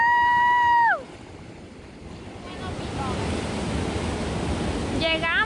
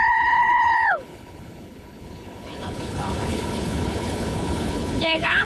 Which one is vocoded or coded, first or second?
second